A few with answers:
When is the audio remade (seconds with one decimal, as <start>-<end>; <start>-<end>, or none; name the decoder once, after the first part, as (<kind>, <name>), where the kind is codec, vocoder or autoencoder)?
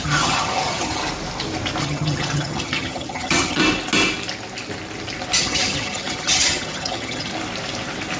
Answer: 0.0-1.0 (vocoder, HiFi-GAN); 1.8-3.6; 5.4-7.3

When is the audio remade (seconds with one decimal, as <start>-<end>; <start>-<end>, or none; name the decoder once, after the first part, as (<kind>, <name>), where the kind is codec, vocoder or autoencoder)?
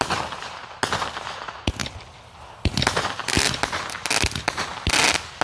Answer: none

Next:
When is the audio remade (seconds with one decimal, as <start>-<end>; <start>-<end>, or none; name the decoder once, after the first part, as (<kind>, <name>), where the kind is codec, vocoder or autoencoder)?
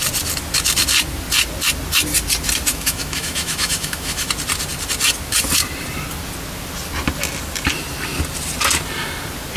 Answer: 2.7-4.3 (autoencoder, DAC-VAE)